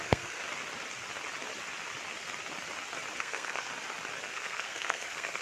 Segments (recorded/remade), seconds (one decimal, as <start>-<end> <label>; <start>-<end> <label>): 0.0-0.4 remade; 0.4-3.2 recorded; 3.2-3.7 remade; 3.7-4.2 recorded; 4.2-5.4 remade